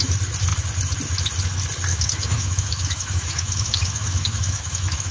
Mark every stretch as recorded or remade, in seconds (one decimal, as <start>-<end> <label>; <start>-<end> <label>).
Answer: 0.0-1.9 recorded; 1.9-5.1 remade